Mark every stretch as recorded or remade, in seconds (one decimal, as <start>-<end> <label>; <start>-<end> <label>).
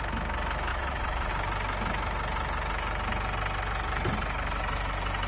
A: 0.0-0.7 recorded; 0.7-1.3 remade; 1.3-5.3 recorded